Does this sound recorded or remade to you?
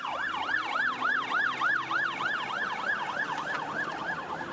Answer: recorded